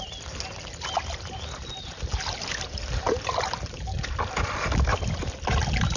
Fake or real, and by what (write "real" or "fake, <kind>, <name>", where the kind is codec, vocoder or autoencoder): real